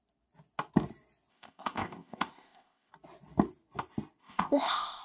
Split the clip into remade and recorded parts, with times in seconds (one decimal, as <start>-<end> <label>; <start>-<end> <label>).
0.0-1.3 recorded; 1.3-2.9 remade; 2.9-4.2 recorded; 4.2-5.0 remade